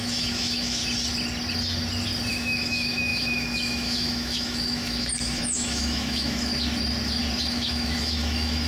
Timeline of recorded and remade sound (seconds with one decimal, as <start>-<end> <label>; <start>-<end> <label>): 0.0-0.8 remade; 0.8-2.3 recorded; 2.3-6.5 remade; 6.5-7.5 recorded; 7.5-8.7 remade

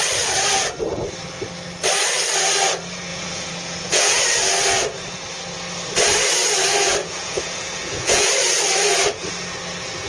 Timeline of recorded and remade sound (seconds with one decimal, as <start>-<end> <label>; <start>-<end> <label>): 0.0-3.1 recorded; 3.1-4.2 remade; 4.2-7.0 recorded; 7.0-8.3 remade; 8.3-10.1 recorded

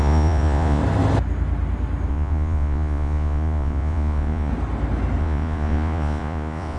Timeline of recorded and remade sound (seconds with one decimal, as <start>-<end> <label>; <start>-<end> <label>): 0.0-0.8 remade; 0.8-2.1 recorded; 2.1-4.5 remade; 4.5-5.2 recorded; 5.2-6.8 remade